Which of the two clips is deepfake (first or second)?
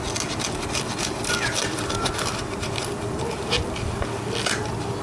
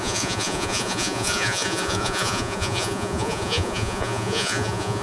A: second